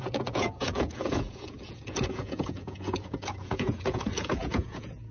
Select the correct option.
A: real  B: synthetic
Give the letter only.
B